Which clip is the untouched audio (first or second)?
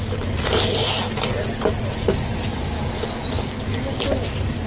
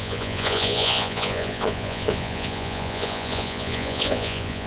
first